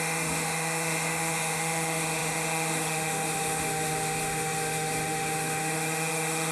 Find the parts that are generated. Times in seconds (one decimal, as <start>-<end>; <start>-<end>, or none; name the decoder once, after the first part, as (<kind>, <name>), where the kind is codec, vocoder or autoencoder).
0.0-6.5 (autoencoder, DAC-VAE)